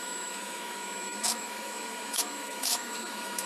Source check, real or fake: fake